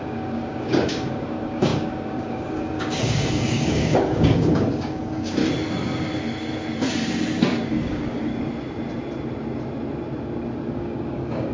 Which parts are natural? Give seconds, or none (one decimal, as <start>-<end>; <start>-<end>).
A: 5.4-7.7; 8.3-10.7

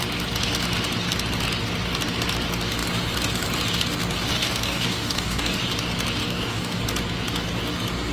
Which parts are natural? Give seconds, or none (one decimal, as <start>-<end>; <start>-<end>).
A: 0.0-4.3; 5.6-6.2; 6.8-8.1

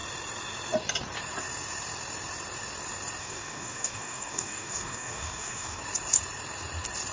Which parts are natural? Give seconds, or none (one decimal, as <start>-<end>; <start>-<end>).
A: 0.0-3.2; 5.8-7.1

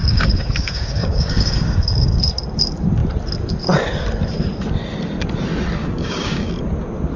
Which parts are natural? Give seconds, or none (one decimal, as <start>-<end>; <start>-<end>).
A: 2.2-5.8; 6.5-7.2

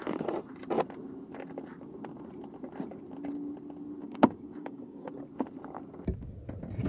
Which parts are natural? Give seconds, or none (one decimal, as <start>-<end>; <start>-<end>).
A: 0.0-4.0; 5.1-6.9

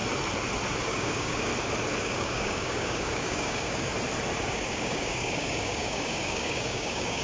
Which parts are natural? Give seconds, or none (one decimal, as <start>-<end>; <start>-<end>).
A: 0.0-0.8; 1.5-2.0; 3.9-4.4

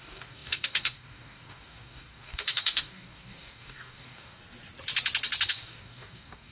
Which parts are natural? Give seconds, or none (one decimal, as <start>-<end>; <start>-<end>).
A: 4.4-5.5